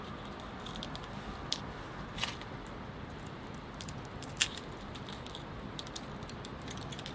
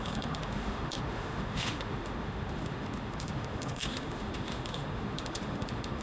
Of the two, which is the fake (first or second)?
second